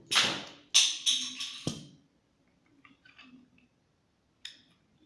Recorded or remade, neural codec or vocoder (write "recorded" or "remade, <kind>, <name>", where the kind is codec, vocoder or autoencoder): recorded